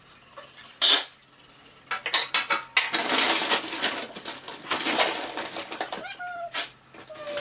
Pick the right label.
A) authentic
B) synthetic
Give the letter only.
A